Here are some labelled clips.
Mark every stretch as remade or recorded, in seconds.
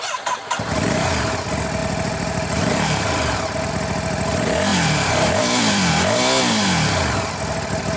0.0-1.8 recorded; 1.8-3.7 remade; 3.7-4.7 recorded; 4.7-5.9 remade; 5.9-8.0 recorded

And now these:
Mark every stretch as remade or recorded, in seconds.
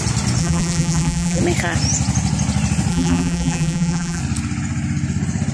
0.0-0.4 recorded; 0.4-1.4 remade; 1.4-2.9 recorded; 2.9-4.2 remade; 4.2-5.5 recorded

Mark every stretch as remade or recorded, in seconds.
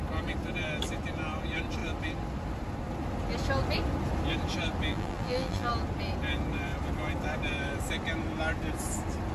0.0-4.9 recorded; 4.9-5.7 remade; 5.7-9.3 recorded